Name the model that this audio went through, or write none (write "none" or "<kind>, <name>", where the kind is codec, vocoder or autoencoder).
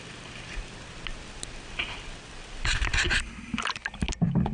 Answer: none